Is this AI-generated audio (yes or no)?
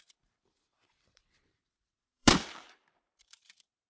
yes